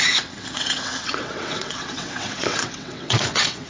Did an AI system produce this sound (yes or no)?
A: yes